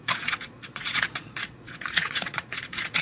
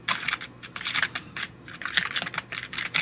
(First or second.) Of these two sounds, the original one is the second